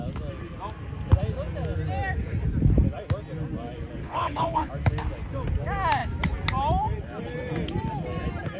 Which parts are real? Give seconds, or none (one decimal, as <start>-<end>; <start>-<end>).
0.0-4.0; 4.7-8.6